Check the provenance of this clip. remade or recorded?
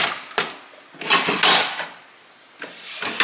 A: recorded